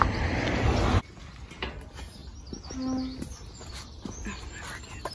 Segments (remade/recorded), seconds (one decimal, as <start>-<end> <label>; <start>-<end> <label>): 0.0-5.1 recorded